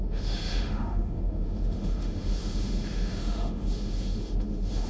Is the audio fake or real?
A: fake